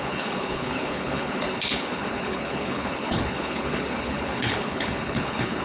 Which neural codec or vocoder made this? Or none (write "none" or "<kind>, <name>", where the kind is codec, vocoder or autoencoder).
codec, HILCodec